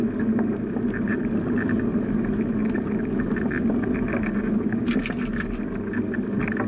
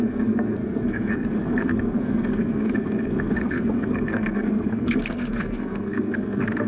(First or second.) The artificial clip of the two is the second